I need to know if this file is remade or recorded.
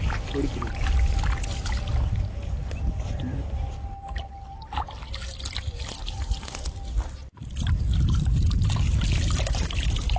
recorded